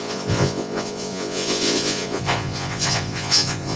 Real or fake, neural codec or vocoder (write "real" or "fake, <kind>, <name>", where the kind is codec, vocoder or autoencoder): fake, vocoder, Vocos